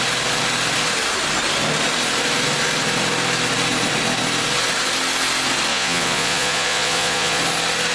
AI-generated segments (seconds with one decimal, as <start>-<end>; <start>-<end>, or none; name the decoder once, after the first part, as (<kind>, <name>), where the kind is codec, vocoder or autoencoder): 5.7-7.4 (vocoder, Vocos)